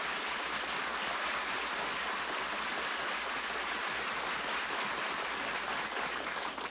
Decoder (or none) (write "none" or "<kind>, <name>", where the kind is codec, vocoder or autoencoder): none